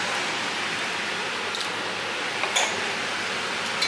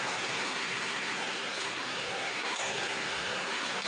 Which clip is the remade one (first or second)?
second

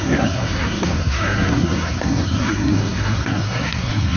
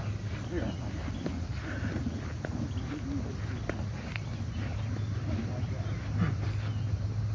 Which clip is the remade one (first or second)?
first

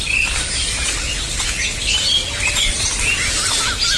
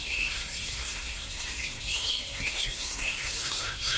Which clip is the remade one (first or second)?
second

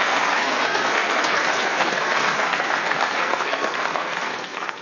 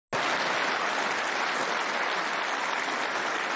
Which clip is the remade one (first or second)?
first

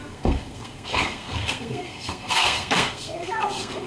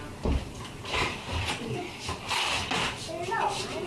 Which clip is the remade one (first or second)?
first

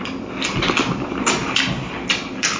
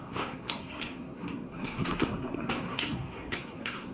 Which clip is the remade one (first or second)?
second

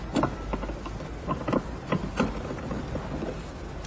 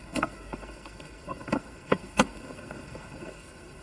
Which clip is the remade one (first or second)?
second